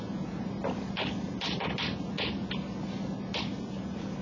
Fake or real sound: real